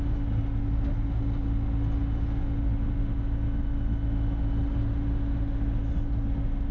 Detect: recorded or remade recorded